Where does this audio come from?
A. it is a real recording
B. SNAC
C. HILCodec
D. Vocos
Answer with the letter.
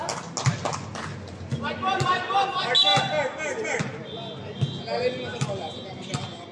A